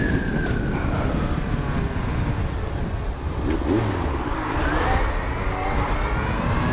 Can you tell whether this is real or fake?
real